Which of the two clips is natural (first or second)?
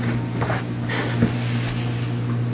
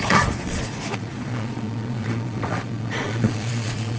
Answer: first